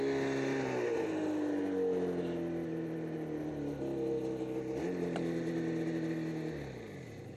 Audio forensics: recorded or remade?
recorded